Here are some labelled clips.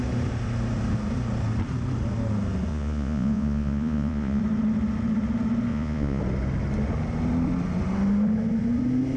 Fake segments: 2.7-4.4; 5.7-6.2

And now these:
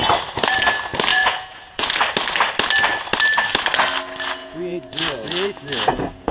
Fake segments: 1.1-1.9; 4.4-6.3

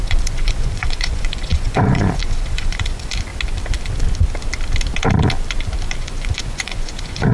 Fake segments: 0.0-3.3; 6.0-7.3

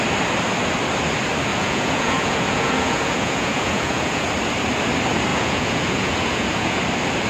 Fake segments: 1.5-4.3; 5.3-6.8

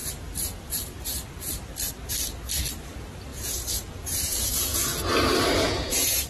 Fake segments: 3.3-5.0; 5.6-6.3